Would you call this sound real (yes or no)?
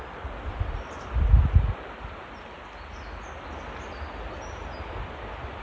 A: yes